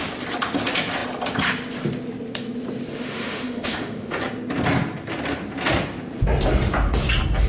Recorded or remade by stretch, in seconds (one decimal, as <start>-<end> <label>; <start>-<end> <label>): 0.0-2.9 recorded; 2.9-4.2 remade; 4.2-7.5 recorded